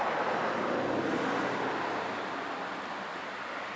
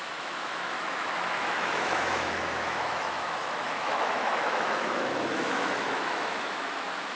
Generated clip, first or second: second